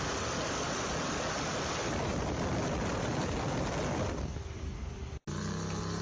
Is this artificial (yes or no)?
no